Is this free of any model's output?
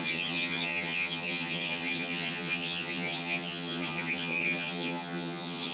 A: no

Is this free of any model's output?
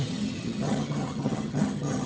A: no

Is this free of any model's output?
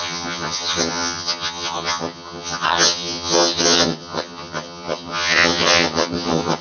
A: no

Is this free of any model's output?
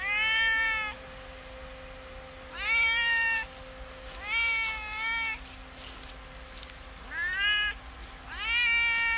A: yes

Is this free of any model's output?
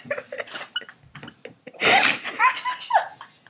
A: yes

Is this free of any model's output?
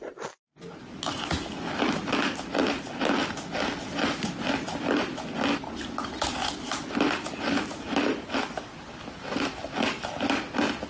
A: yes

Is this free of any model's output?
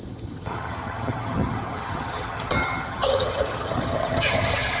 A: no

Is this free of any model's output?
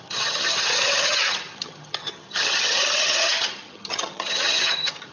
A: no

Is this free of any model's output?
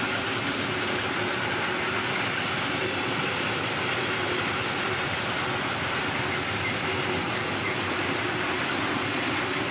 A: yes